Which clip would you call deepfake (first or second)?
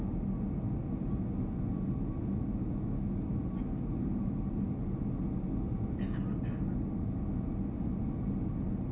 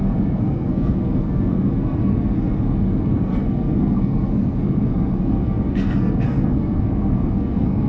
second